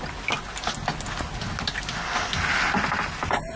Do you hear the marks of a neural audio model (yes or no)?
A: no